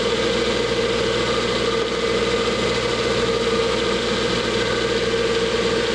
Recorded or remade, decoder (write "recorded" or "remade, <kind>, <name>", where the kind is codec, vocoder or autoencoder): recorded